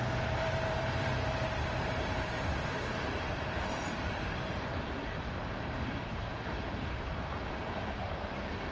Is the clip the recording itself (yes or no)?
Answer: no